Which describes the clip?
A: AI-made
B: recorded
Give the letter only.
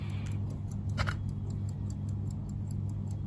B